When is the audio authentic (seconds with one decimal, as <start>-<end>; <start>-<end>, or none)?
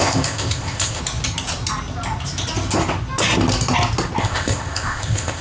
1.0-4.2